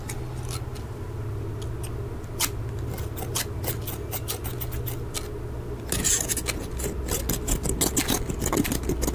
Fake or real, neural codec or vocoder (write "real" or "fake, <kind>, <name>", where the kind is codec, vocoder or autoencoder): real